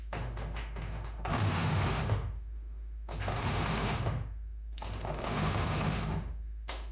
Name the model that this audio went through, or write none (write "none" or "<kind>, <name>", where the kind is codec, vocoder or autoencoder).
autoencoder, DAC-VAE